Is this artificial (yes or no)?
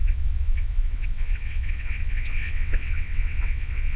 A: yes